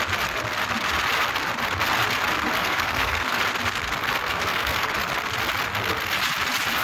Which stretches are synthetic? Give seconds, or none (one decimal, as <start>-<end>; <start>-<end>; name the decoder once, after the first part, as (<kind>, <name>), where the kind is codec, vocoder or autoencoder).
2.6-3.4 (codec, SNAC); 4.2-4.9